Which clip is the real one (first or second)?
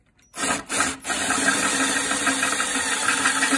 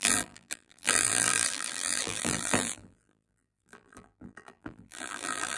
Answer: first